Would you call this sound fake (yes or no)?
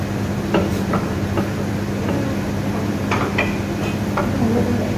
no